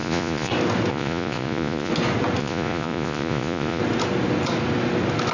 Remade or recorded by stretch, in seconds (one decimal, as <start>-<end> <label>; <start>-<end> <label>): 0.0-0.5 remade; 0.5-0.9 recorded; 0.9-1.9 remade; 1.9-2.4 recorded; 2.4-3.8 remade; 3.8-5.3 recorded